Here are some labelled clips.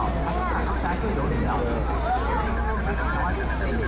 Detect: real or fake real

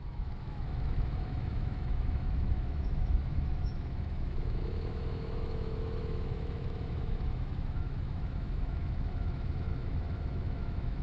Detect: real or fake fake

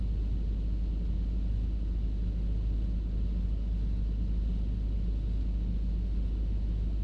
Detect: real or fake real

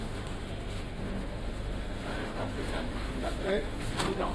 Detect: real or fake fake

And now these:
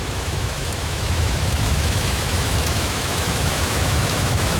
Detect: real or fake fake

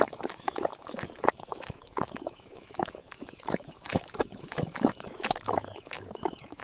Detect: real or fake fake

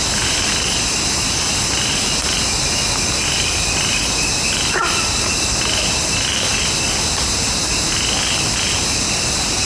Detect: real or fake real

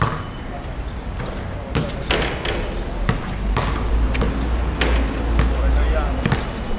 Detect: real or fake real